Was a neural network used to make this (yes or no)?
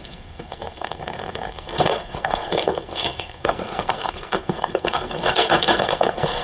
yes